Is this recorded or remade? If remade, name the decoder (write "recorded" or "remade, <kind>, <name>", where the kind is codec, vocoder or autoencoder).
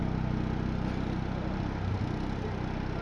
recorded